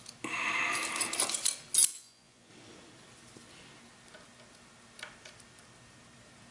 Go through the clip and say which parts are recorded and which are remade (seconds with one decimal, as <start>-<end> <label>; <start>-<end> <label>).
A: 0.0-1.9 recorded; 1.9-2.5 remade; 2.5-6.5 recorded